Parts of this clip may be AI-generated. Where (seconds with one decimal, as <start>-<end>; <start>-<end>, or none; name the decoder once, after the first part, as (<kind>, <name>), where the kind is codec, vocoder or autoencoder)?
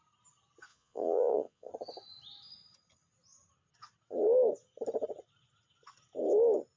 0.7-1.7 (vocoder, Vocos)